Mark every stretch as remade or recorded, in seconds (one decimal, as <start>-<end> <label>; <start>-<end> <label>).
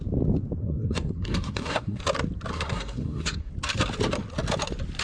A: 0.0-0.6 recorded; 0.6-2.0 remade; 2.0-2.5 recorded; 2.5-3.5 remade; 3.5-5.0 recorded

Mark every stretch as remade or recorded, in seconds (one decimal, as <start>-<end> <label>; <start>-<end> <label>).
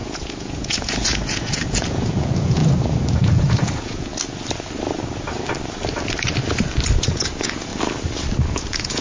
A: 0.0-2.6 remade; 2.6-3.1 recorded; 3.1-4.1 remade; 4.1-7.0 recorded; 7.0-7.7 remade; 7.7-8.5 recorded; 8.5-9.0 remade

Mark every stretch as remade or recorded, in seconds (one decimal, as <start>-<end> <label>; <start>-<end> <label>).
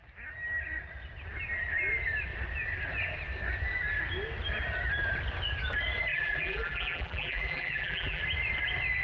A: 0.0-6.1 recorded; 6.1-8.2 remade; 8.2-9.0 recorded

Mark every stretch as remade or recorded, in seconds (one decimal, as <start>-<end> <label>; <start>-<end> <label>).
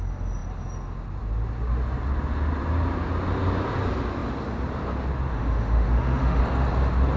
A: 0.0-5.3 recorded; 5.3-6.4 remade; 6.4-7.2 recorded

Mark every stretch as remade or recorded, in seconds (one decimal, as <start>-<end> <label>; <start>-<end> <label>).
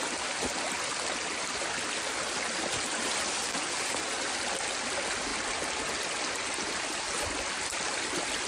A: 0.0-8.5 recorded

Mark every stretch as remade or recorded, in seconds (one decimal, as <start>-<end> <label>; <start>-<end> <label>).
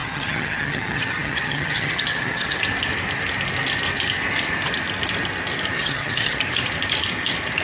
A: 0.0-2.6 remade; 2.6-5.8 recorded; 5.8-6.4 remade; 6.4-7.6 recorded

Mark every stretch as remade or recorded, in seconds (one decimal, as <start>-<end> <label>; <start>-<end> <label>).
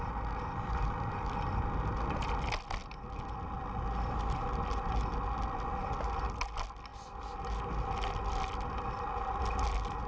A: 0.0-10.1 recorded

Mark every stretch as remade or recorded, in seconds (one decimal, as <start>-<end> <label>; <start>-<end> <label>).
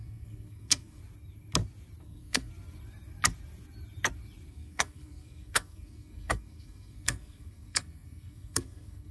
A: 0.0-1.0 remade; 1.0-2.0 recorded; 2.0-2.5 remade; 2.5-4.5 recorded; 4.5-9.1 remade